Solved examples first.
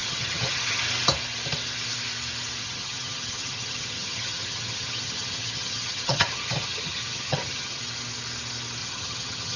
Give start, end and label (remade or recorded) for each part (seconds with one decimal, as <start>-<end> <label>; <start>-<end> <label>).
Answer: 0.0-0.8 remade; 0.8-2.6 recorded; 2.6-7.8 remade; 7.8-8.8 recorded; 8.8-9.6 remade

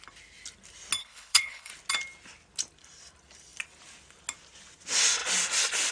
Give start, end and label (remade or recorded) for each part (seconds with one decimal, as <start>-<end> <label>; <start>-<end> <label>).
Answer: 0.0-1.0 recorded; 1.0-1.7 remade; 1.7-5.9 recorded

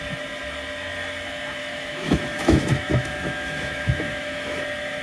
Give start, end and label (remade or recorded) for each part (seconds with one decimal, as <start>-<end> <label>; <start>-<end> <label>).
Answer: 0.0-1.6 recorded; 1.6-4.6 remade; 4.6-5.0 recorded